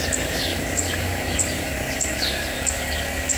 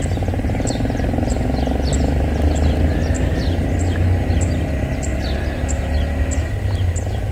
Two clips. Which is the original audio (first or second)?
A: second